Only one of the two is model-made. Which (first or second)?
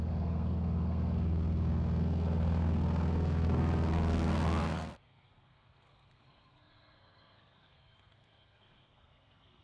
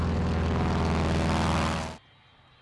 first